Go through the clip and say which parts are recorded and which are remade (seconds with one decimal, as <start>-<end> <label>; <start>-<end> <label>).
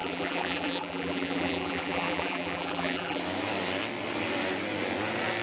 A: 0.0-3.2 remade; 3.2-5.4 recorded